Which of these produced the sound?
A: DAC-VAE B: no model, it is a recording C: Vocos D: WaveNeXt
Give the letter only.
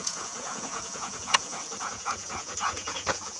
C